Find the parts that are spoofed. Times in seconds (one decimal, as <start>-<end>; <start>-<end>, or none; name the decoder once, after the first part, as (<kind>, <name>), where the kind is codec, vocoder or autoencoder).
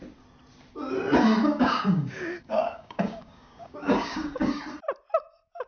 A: 1.4-4.6 (codec, DAC)